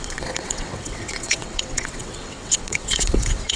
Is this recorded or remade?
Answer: remade